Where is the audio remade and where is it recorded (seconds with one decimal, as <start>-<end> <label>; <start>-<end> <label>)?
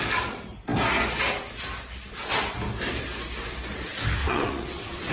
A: 0.0-4.2 recorded; 4.2-5.1 remade